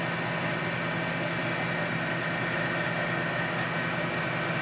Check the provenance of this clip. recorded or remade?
recorded